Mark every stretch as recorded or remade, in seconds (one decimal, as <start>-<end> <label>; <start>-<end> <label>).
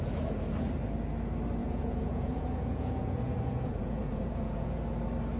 0.0-1.6 recorded; 1.6-4.8 remade; 4.8-5.4 recorded